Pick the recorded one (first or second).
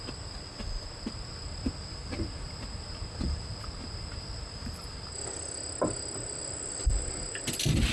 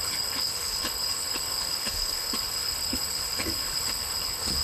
first